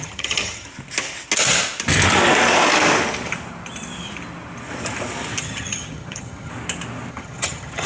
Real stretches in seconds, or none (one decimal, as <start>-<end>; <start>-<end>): 0.7-5.4; 6.5-7.1